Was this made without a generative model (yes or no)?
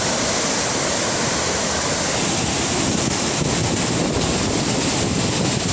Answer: yes